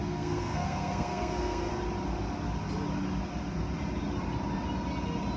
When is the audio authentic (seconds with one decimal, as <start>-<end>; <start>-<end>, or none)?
1.7-5.4